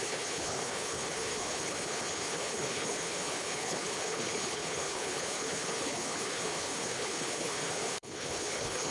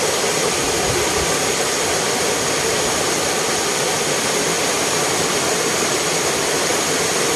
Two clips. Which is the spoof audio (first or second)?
first